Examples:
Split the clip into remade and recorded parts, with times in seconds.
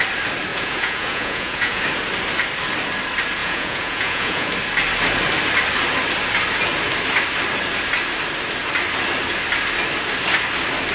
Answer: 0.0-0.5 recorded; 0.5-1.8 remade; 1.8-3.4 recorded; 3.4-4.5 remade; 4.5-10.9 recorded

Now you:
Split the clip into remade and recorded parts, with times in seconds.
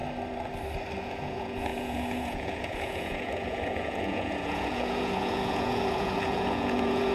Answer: 0.0-1.0 recorded; 1.0-7.1 remade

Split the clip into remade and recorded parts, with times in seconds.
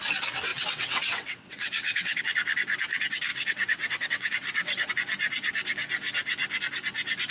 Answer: 0.0-0.5 recorded; 0.5-2.2 remade; 2.2-3.3 recorded; 3.3-4.9 remade; 4.9-7.3 recorded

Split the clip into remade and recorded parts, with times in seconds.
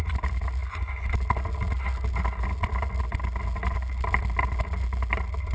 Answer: 0.0-5.5 recorded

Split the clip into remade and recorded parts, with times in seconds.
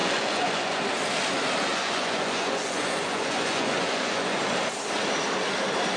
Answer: 0.0-0.8 remade; 0.8-1.7 recorded; 1.7-4.4 remade; 4.4-6.0 recorded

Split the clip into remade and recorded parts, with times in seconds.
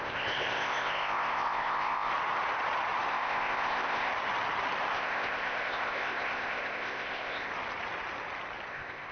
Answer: 0.0-2.1 remade; 2.1-3.1 recorded; 3.1-4.1 remade; 4.1-4.9 recorded; 4.9-7.5 remade; 7.5-8.7 recorded; 8.7-9.1 remade